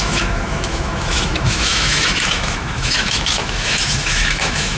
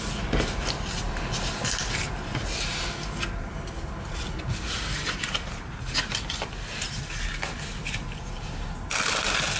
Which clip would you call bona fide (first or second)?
second